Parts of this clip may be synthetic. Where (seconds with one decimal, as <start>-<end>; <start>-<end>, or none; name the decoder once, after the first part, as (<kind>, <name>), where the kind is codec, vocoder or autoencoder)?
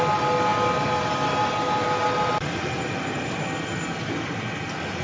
none